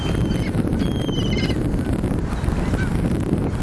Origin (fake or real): fake